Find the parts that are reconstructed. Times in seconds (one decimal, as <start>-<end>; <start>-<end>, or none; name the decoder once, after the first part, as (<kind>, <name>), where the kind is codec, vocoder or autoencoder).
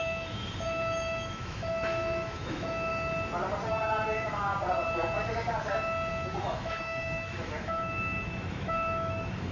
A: 0.0-2.9 (autoencoder, DAC-VAE); 3.7-4.5; 6.1-9.5